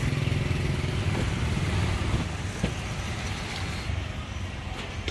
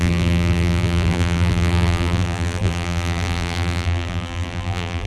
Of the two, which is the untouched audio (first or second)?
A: first